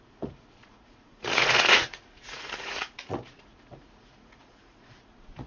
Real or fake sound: fake